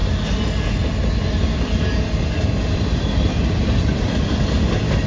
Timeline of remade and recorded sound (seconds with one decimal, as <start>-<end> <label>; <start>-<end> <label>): 0.0-2.4 recorded; 2.4-5.1 remade